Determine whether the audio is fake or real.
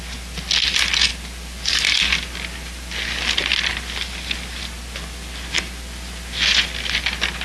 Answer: real